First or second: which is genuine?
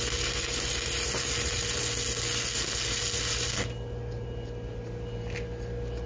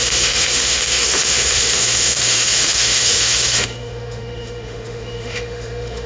first